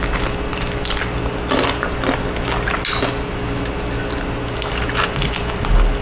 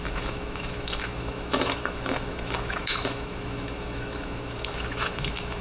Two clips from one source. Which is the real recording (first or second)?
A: first